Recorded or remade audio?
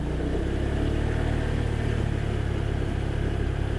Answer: remade